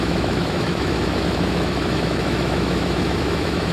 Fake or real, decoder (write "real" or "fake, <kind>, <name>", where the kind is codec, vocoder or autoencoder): fake, autoencoder, DAC-VAE